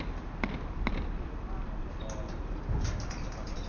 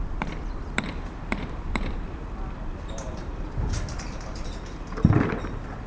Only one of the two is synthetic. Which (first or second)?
second